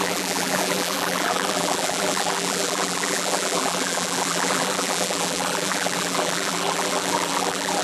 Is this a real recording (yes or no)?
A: no